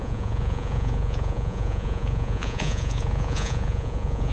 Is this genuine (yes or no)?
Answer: no